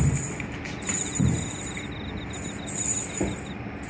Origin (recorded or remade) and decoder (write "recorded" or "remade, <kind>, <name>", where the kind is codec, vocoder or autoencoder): recorded